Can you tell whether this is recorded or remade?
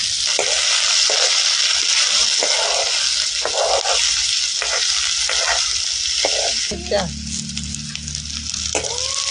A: recorded